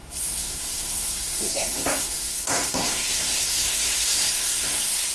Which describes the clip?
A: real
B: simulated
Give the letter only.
B